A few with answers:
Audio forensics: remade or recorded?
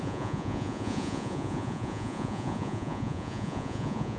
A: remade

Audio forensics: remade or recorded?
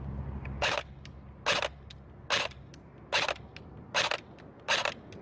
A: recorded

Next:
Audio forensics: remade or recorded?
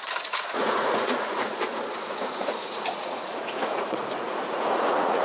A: remade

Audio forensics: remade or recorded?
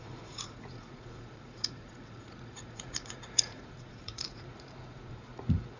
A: remade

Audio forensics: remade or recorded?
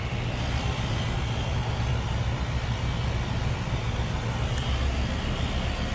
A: recorded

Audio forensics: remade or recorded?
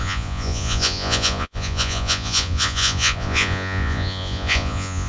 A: remade